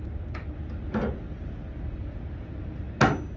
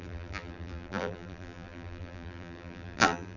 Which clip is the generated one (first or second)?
second